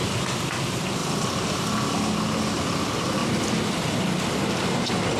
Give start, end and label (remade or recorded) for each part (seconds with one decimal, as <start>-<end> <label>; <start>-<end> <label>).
0.0-5.2 recorded